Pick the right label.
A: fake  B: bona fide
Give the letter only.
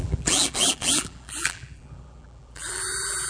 A